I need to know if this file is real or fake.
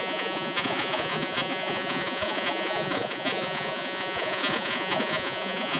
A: fake